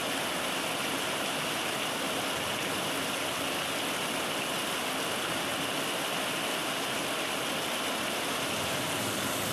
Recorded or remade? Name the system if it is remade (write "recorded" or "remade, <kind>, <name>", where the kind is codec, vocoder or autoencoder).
recorded